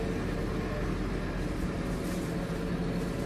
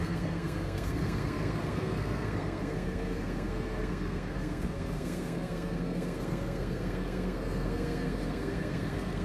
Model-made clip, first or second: second